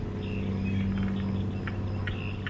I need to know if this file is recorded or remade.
recorded